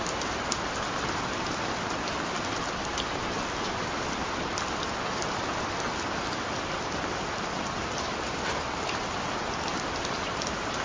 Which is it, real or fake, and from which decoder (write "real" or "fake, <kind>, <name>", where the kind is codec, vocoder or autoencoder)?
real